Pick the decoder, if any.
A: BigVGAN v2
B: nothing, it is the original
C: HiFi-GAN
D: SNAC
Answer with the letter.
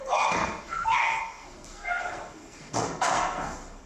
D